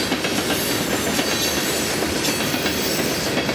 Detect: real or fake real